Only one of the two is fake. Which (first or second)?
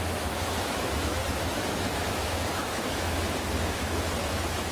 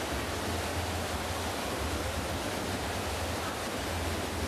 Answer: first